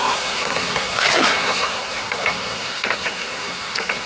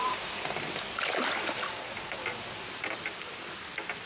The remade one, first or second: first